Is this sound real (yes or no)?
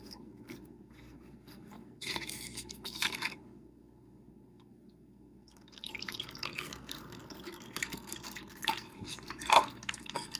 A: no